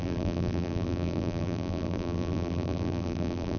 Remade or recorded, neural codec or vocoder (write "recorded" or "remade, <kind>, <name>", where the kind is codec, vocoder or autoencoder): remade, vocoder, BigVGAN v2